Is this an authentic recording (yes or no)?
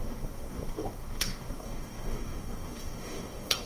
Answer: no